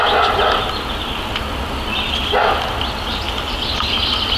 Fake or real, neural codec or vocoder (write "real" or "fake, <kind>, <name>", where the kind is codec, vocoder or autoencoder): real